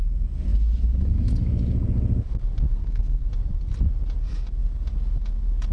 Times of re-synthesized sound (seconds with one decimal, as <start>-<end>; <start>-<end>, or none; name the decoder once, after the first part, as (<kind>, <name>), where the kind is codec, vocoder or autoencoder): 2.7-3.3 (codec, SNAC)